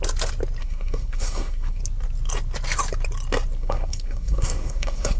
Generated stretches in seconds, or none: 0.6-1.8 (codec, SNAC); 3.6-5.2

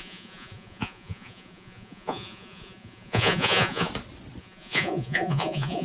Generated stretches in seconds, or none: 0.0-3.9 (vocoder, Vocos); 4.4-5.8

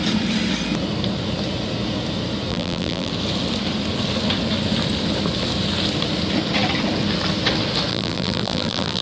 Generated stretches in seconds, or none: 2.5-3.1 (vocoder, BigVGAN v2); 7.9-9.0

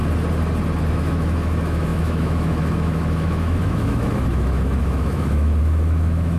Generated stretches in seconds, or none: 0.9-6.4 (autoencoder, DAC-VAE)

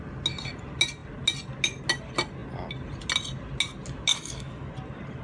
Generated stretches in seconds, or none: 4.1-4.7 (autoencoder, DAC-VAE)